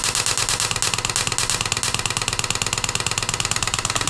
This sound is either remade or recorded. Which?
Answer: recorded